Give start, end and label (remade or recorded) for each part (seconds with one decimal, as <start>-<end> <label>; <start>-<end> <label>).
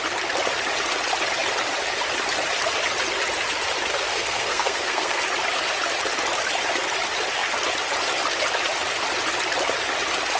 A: 0.0-3.9 recorded; 3.9-5.2 remade; 5.2-10.4 recorded